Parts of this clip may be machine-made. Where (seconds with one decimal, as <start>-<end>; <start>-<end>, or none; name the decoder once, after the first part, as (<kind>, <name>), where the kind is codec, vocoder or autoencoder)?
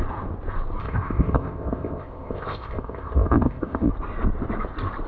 0.8-3.9 (codec, ZipCodec)